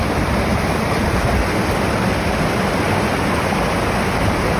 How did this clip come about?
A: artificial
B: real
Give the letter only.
B